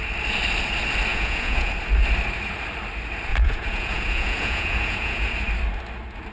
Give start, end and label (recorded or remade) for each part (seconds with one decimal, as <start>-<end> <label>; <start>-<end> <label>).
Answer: 0.0-1.1 recorded; 1.1-1.7 remade; 1.7-3.3 recorded; 3.3-5.3 remade; 5.3-6.3 recorded